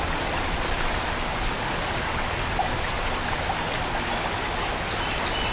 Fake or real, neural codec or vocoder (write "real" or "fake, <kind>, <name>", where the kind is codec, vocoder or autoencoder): real